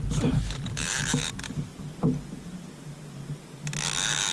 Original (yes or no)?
yes